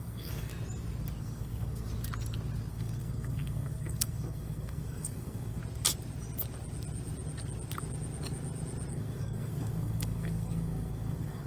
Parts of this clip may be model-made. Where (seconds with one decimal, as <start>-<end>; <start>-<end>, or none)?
0.0-0.5; 1.2-1.9; 2.7-5.6; 8.9-11.5